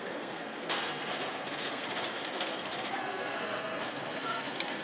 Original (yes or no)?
no